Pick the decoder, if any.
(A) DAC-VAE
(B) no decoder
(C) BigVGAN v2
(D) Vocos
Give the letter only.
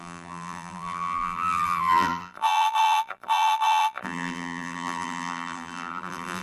C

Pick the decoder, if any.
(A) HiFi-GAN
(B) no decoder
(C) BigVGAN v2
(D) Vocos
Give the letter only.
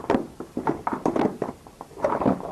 C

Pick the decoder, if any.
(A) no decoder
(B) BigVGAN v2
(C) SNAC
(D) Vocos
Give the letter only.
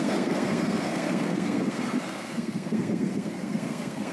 C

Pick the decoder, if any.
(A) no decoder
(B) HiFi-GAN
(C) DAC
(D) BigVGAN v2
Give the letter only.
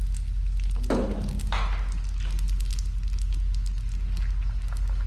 A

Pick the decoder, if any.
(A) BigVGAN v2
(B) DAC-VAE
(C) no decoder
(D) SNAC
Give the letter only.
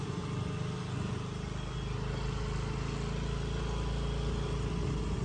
C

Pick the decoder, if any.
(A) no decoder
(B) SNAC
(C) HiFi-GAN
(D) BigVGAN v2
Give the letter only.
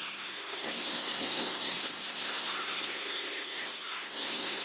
B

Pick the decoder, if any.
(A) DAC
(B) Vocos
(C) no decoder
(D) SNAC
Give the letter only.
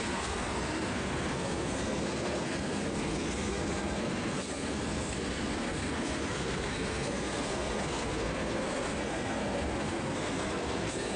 D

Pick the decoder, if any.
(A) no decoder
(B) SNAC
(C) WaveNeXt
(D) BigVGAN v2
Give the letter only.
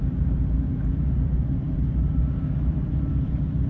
D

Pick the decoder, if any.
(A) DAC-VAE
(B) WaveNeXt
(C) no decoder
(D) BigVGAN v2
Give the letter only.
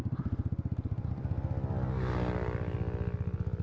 C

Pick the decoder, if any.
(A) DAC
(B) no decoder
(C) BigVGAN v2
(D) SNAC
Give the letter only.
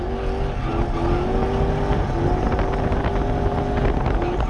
B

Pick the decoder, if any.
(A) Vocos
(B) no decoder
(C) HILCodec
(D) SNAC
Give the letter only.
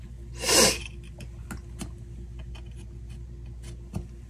B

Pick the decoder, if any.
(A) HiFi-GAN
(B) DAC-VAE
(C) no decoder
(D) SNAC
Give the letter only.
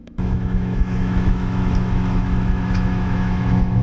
B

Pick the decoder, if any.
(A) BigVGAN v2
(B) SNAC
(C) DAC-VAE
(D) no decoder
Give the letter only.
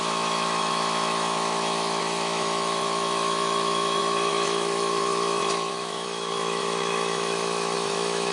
C